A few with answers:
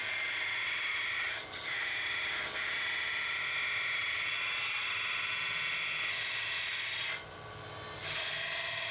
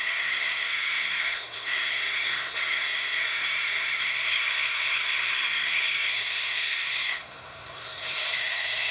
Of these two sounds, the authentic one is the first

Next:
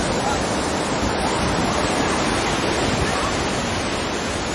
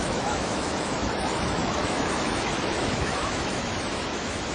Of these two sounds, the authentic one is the first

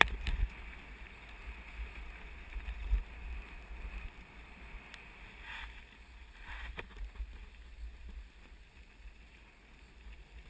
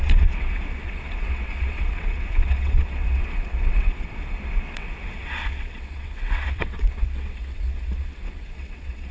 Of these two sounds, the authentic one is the first